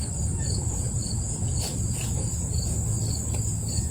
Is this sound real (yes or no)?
yes